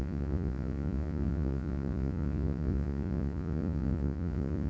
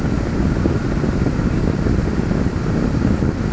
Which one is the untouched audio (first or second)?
second